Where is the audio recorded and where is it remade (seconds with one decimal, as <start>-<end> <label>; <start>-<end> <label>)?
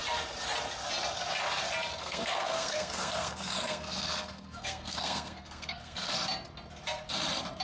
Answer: 0.0-2.0 recorded; 2.0-6.1 remade; 6.1-7.6 recorded